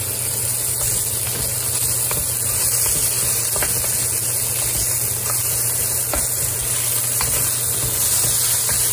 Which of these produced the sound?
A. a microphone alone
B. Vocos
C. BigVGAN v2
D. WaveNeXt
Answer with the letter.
A